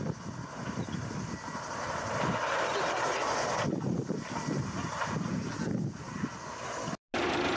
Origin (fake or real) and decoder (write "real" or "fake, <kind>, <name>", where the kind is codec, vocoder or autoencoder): real